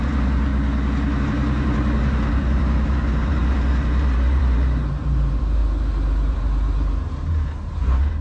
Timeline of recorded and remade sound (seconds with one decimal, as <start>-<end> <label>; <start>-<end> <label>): 0.0-0.5 remade; 0.5-1.2 recorded; 1.2-5.6 remade; 5.6-6.3 recorded; 6.3-8.2 remade